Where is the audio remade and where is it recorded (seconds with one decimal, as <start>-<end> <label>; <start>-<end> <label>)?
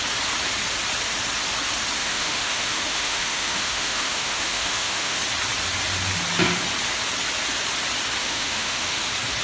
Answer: 0.0-2.0 recorded; 2.0-5.2 remade; 5.2-8.2 recorded; 8.2-9.0 remade; 9.0-9.4 recorded